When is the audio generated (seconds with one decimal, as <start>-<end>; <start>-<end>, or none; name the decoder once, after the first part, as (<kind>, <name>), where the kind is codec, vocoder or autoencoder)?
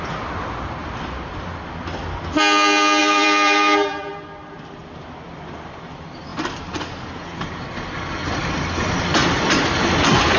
3.0-4.1 (vocoder, BigVGAN v2)